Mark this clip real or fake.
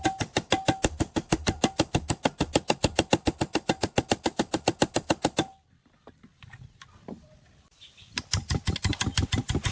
real